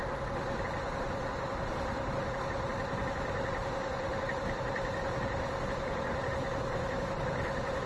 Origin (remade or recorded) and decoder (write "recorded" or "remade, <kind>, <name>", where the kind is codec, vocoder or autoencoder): recorded